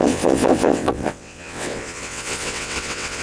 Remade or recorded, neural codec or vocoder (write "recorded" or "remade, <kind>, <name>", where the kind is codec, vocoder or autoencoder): remade, vocoder, WaveNeXt